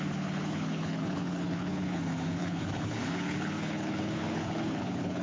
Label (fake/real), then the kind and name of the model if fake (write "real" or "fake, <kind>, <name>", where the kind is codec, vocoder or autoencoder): fake, codec, HILCodec